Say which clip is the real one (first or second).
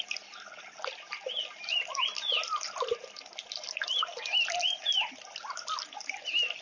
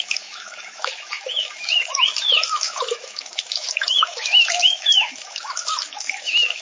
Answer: first